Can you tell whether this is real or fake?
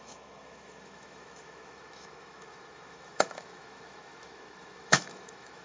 fake